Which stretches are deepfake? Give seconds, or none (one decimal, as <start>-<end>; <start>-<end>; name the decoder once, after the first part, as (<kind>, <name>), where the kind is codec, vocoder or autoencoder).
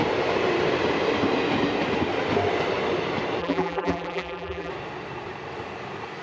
3.4-4.7 (vocoder, BigVGAN v2)